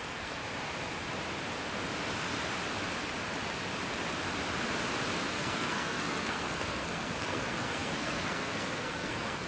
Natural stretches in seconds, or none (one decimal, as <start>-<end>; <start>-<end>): 0.4-5.3